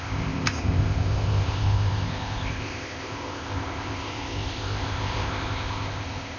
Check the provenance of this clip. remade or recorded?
remade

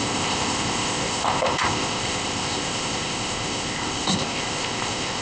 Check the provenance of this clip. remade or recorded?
remade